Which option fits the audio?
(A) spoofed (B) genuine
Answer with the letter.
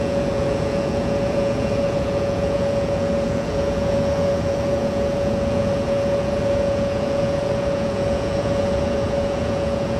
A